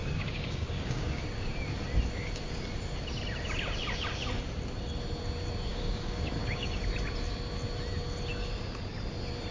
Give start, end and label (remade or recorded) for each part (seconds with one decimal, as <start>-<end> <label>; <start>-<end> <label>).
0.0-1.2 remade; 1.2-5.7 recorded; 5.7-6.8 remade; 6.8-9.5 recorded